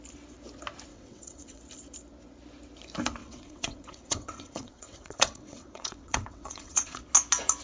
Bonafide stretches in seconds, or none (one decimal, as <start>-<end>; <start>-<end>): 0.0-0.9; 1.6-3.2; 7.0-7.6